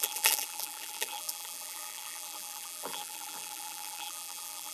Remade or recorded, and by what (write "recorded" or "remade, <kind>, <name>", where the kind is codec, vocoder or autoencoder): remade, vocoder, BigVGAN v2